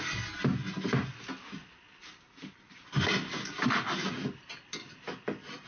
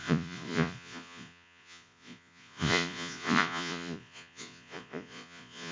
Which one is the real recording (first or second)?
first